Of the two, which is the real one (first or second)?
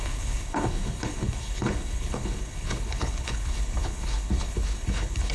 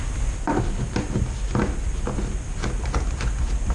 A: second